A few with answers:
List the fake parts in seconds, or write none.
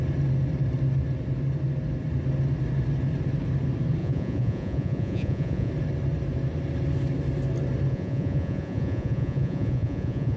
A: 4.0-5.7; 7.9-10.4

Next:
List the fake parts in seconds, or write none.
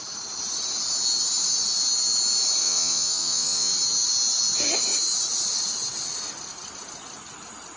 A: 2.6-3.7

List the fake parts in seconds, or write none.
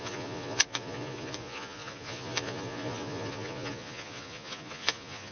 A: 0.0-5.3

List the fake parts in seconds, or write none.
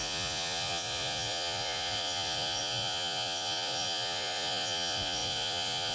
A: 0.0-5.9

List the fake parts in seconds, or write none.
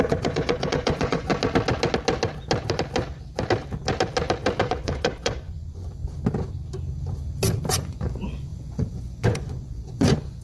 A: 0.0-1.3; 4.6-6.0; 7.7-10.4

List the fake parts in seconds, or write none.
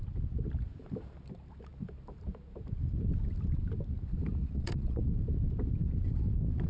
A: 4.4-5.0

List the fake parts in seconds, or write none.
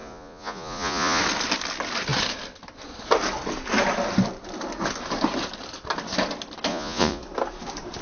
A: 0.0-1.2; 6.7-7.2